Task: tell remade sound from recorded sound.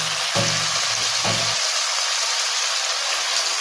recorded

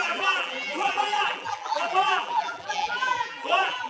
remade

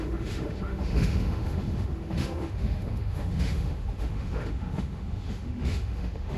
remade